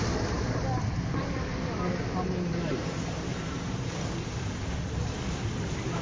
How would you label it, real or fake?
real